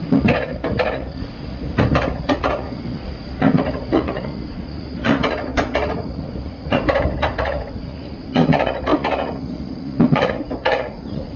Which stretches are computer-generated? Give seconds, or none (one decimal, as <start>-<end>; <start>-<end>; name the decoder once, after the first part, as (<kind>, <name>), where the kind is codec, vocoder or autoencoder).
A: 0.0-11.4 (vocoder, Vocos)